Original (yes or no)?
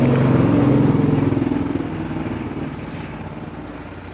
yes